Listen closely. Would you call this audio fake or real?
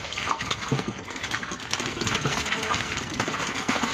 fake